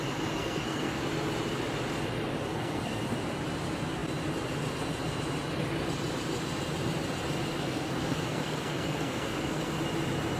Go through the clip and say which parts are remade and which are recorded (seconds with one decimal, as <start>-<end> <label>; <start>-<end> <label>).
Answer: 0.0-0.4 recorded; 0.4-1.0 remade; 1.0-2.5 recorded; 2.5-3.0 remade; 3.0-7.5 recorded; 7.5-9.8 remade; 9.8-10.4 recorded